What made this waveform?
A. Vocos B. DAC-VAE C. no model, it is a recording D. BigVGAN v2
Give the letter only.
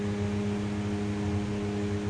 C